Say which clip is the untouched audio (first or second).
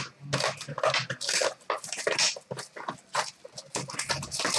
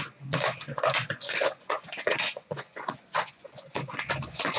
first